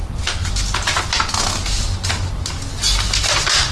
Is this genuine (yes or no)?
yes